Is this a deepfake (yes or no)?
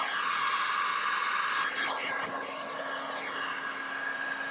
no